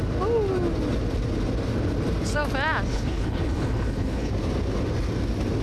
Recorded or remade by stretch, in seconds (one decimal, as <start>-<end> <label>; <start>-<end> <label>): 0.0-2.9 recorded; 2.9-4.3 remade; 4.3-5.6 recorded